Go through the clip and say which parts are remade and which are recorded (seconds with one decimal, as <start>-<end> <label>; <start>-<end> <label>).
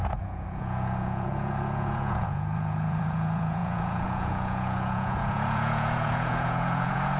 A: 0.0-7.2 remade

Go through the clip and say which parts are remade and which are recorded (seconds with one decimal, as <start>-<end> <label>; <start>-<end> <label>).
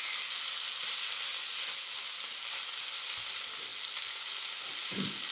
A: 0.0-5.3 recorded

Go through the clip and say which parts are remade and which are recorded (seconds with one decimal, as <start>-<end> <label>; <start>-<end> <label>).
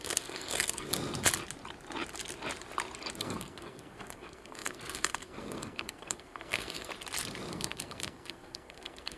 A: 0.0-0.9 remade; 0.9-3.2 recorded; 3.2-6.9 remade; 6.9-7.5 recorded; 7.5-9.2 remade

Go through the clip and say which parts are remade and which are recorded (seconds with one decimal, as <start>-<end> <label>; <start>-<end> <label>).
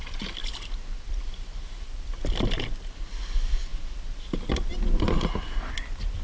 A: 0.0-6.2 recorded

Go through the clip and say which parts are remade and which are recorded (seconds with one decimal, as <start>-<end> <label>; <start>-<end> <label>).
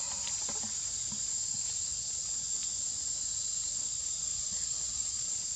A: 0.0-1.9 recorded; 1.9-2.6 remade; 2.6-4.2 recorded; 4.2-5.6 remade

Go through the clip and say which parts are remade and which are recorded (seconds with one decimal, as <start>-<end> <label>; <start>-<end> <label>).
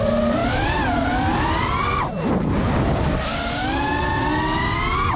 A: 0.0-0.4 recorded; 0.4-2.5 remade; 2.5-5.2 recorded